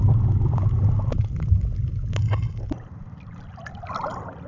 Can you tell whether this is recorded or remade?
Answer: remade